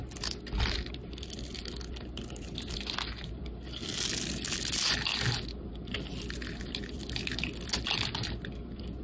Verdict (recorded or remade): recorded